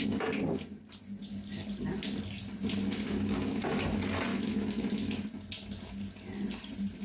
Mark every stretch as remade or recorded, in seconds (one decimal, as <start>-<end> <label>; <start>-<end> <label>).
0.0-4.3 recorded; 4.3-5.3 remade; 5.3-7.0 recorded